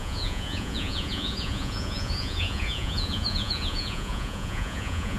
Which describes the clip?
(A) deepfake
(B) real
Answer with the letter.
A